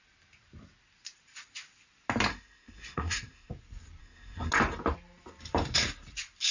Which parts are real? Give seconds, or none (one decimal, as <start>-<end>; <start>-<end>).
0.0-2.3; 3.5-4.0; 4.5-6.5